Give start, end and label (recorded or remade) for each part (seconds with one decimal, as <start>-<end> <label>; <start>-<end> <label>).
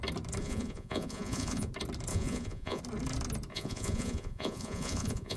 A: 0.0-0.4 recorded; 0.4-1.7 remade; 1.7-2.1 recorded; 2.1-2.8 remade; 2.8-3.5 recorded; 3.5-5.4 remade